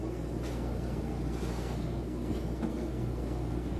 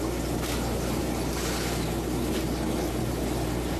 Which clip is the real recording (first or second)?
second